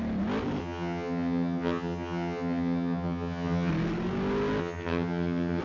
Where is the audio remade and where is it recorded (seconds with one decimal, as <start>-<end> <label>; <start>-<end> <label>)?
0.0-0.6 recorded; 0.6-3.7 remade; 3.7-4.6 recorded; 4.6-5.6 remade